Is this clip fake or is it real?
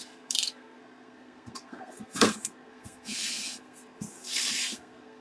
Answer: fake